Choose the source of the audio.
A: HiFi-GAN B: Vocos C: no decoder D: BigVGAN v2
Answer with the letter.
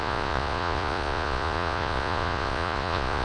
B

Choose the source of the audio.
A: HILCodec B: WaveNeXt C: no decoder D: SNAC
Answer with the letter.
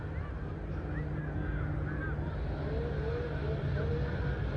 C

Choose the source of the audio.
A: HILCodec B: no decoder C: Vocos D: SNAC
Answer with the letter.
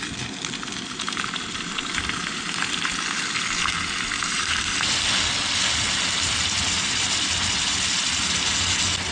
B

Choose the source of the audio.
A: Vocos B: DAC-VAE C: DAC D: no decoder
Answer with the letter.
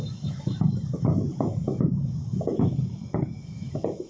B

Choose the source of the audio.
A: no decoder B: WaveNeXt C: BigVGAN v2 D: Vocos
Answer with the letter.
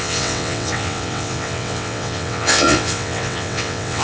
B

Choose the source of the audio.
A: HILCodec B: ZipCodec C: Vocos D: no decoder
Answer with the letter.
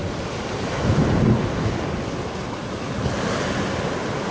D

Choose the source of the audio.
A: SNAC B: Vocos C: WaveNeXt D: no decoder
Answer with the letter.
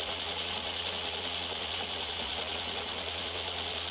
B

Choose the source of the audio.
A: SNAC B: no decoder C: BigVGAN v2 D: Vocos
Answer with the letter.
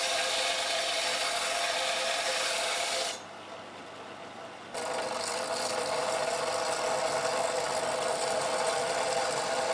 B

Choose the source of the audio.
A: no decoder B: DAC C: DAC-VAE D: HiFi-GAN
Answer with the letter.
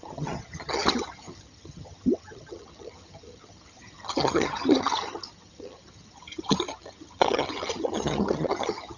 D